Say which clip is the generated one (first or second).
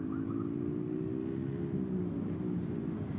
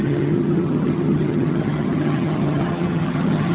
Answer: second